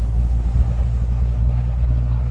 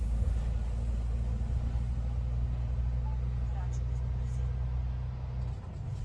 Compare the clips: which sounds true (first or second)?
second